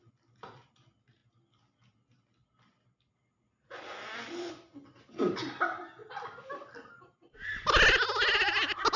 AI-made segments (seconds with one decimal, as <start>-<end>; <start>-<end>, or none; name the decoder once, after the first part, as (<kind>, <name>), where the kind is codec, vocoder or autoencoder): 7.0-7.6 (vocoder, BigVGAN v2)